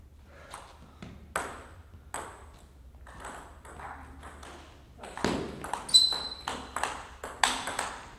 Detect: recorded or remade recorded